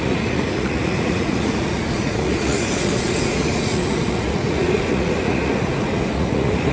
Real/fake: fake